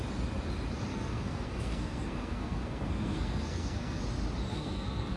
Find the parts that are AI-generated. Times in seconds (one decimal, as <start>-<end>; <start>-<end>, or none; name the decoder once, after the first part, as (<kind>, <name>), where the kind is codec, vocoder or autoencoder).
0.9-4.0 (codec, SNAC); 4.5-5.2